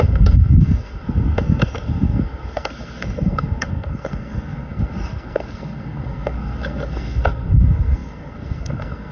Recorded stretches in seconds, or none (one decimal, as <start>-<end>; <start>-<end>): none